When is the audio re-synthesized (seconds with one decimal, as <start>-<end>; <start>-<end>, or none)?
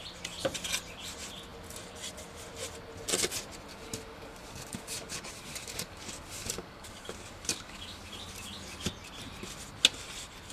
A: 3.7-8.1